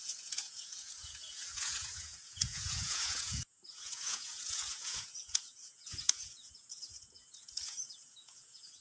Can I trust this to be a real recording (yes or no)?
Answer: no